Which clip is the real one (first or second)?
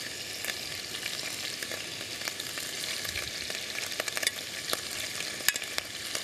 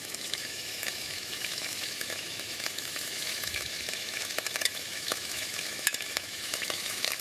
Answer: first